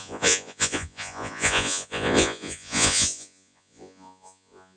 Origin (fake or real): fake